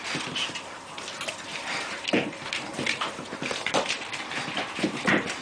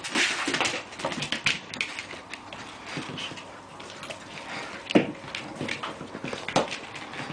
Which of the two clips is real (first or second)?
second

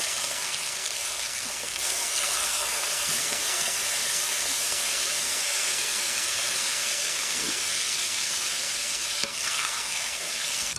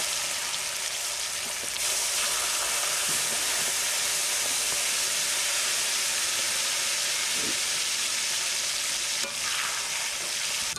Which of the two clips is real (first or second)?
second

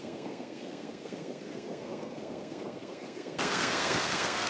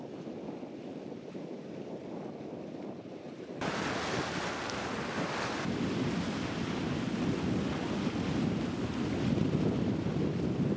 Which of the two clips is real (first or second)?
second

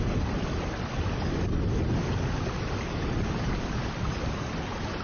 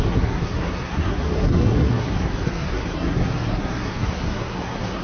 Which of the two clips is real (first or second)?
first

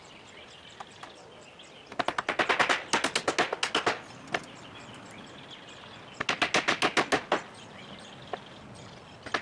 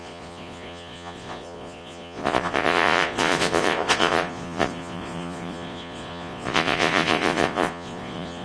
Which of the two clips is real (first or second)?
first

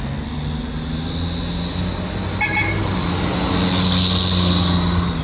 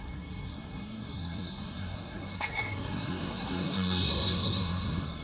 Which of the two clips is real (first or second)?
first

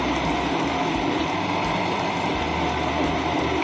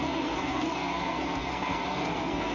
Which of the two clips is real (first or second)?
first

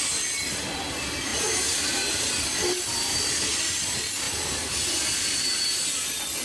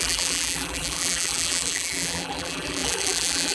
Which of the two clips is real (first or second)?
first